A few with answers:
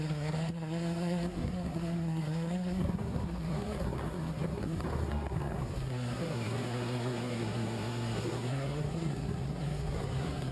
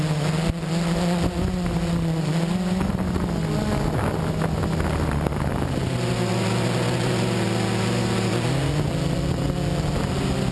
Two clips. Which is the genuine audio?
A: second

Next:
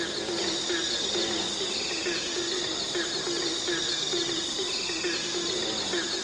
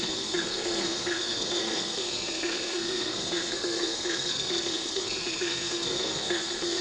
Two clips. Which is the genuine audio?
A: first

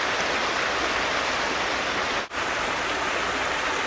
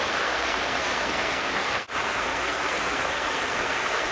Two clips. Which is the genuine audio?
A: first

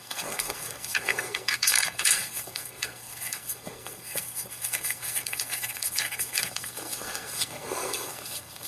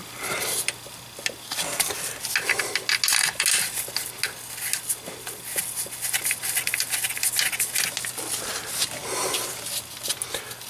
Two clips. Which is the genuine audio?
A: second